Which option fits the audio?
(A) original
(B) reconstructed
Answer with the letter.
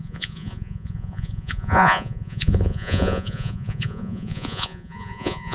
B